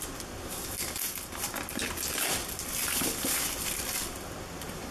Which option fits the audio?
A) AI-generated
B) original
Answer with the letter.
B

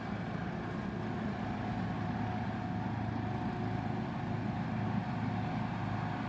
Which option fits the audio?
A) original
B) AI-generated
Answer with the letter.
A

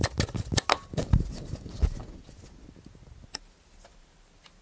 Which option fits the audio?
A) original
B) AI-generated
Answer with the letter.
A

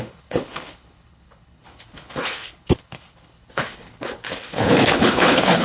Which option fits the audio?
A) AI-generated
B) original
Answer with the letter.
A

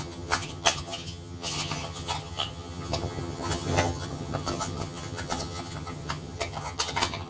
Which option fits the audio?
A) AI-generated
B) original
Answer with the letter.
A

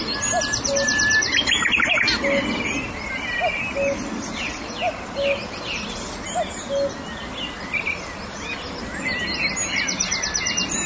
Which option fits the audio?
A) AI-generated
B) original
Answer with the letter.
B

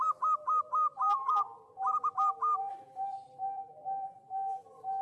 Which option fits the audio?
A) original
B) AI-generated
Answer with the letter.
A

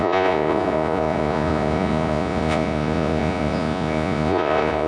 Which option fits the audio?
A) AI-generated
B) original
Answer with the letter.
A